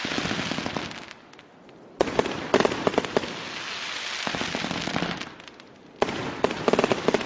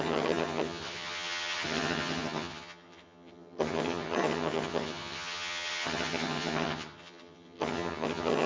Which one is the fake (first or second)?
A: second